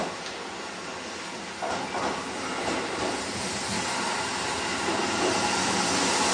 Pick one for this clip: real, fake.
real